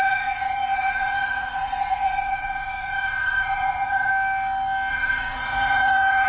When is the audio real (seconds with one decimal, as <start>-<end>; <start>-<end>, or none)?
4.1-4.9